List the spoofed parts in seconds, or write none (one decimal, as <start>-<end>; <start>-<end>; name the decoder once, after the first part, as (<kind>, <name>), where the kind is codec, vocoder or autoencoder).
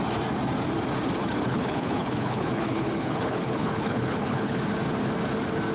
1.2-4.6 (codec, HILCodec)